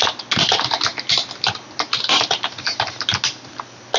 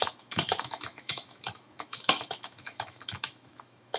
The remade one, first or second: second